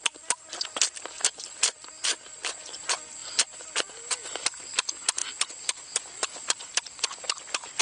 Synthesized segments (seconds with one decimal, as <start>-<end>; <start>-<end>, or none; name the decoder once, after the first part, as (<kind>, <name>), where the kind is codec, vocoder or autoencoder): none